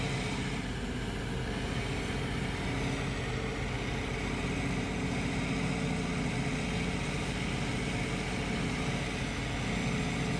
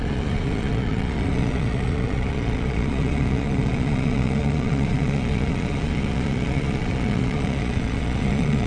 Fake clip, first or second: second